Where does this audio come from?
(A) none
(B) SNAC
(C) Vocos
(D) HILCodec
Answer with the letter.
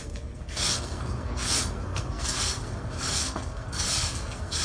B